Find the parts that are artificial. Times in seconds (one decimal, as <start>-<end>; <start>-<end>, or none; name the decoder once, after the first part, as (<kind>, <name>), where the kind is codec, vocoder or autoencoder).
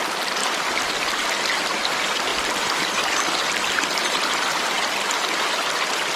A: 0.4-0.9 (vocoder, BigVGAN v2); 2.3-5.4